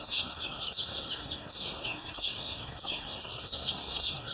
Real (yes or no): no